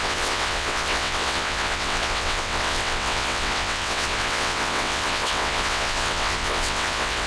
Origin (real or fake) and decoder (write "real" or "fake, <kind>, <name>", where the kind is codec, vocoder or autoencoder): fake, vocoder, WaveNeXt